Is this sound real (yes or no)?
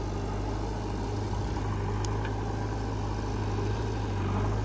yes